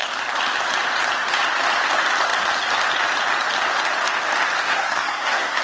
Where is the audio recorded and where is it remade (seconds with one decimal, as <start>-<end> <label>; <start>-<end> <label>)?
0.0-4.6 recorded; 4.6-5.6 remade